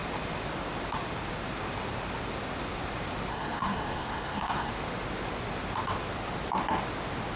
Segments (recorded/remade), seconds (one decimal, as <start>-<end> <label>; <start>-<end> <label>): 0.0-3.3 recorded; 3.3-4.7 remade; 4.7-7.4 recorded